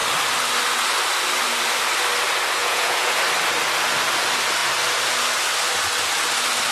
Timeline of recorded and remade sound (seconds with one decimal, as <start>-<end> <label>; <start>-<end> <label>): 0.0-2.6 recorded; 2.6-3.2 remade; 3.2-6.7 recorded